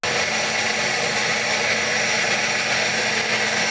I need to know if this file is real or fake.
real